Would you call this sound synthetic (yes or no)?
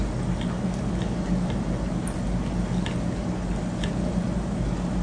no